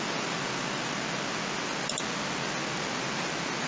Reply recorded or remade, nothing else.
recorded